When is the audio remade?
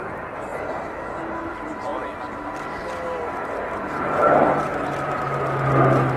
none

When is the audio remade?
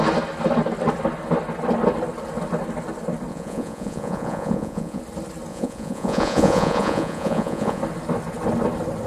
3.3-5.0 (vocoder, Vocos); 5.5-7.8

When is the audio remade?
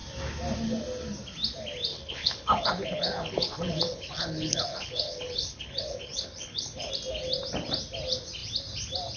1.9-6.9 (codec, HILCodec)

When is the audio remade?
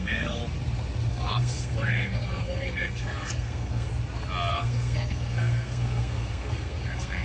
0.0-0.4 (codec, SNAC); 1.1-3.9; 4.5-7.2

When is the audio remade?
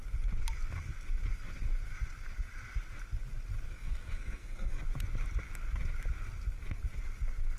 3.7-4.8 (codec, SNAC)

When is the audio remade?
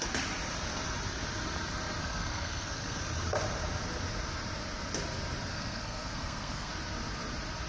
2.0-3.0 (codec, SNAC); 5.5-6.7